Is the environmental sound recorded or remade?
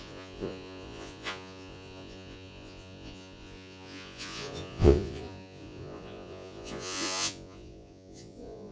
remade